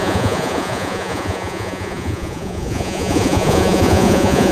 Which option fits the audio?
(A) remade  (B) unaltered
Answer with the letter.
A